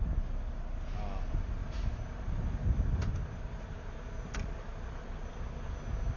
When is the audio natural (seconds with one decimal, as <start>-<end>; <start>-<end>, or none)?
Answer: 0.0-6.2